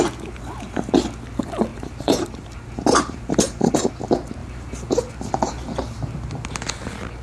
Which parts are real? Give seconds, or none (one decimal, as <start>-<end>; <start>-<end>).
0.0-1.7; 3.9-4.4; 4.9-7.2